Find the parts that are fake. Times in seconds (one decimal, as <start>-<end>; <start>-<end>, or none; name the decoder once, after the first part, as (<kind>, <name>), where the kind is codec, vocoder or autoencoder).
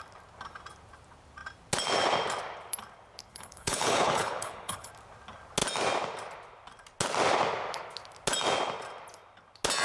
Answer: 3.3-4.9 (codec, HILCodec)